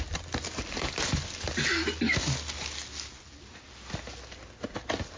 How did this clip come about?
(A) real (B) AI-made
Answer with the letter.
A